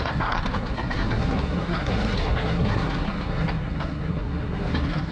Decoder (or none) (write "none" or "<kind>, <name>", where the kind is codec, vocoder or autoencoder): codec, SNAC